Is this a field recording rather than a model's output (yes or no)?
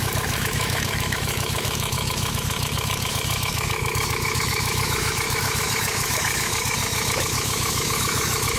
no